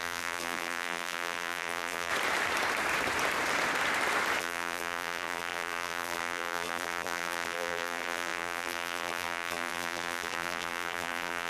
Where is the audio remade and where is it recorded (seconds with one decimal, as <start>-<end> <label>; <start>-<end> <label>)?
0.0-2.1 remade; 2.1-4.4 recorded; 4.4-11.5 remade